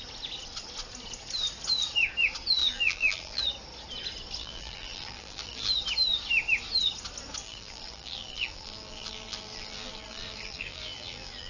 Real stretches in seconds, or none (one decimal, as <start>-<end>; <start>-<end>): 0.0-2.6; 3.4-4.4; 5.7-7.4